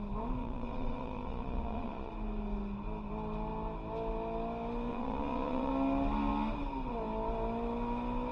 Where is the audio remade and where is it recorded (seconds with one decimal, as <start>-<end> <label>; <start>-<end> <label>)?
0.0-0.4 recorded; 0.4-2.1 remade; 2.1-4.9 recorded; 4.9-5.7 remade; 5.7-8.3 recorded